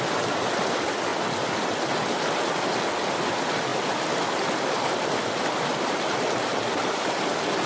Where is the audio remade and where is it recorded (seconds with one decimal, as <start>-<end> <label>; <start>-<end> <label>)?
0.0-7.7 recorded